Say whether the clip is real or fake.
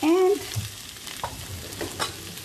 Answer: real